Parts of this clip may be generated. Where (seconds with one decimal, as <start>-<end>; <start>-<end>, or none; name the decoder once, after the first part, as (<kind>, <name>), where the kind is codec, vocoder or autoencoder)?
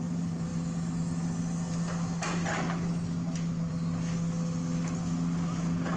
none